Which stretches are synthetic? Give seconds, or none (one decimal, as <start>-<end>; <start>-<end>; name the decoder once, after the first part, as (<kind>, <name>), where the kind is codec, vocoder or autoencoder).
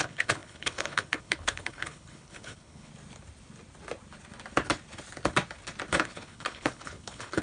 0.0-2.9 (codec, HILCodec); 5.9-7.4